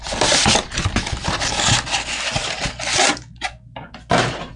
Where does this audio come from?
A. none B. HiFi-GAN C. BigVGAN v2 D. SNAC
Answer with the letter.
A